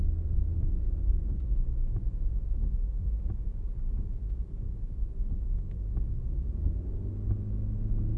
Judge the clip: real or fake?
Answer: real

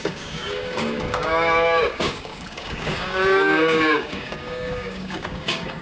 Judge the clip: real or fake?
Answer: fake